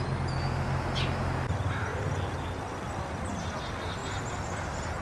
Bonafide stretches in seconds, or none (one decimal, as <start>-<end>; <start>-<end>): 0.0-1.9; 3.5-5.0